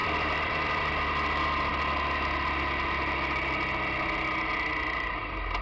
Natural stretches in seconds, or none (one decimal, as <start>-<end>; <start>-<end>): 0.8-5.6